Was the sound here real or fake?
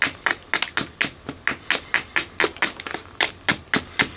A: real